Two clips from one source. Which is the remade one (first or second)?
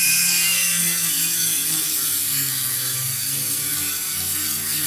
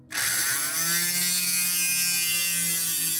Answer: first